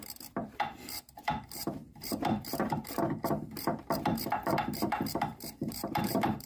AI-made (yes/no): yes